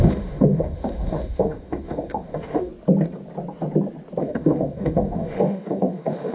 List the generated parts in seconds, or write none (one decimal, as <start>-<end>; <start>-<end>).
0.0-2.7; 4.2-6.3

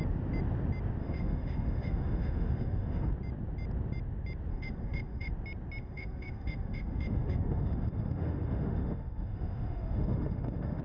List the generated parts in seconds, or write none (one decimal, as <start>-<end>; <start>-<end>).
1.0-3.1; 4.5-5.3; 5.8-10.8

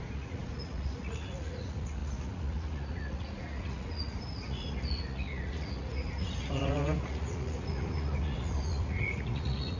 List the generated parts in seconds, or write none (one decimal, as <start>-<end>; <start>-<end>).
0.0-9.8

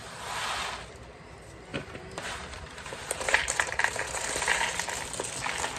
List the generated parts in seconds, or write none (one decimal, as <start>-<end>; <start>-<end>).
1.7-4.4

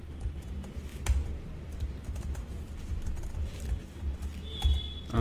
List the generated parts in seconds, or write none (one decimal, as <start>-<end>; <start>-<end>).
0.9-4.0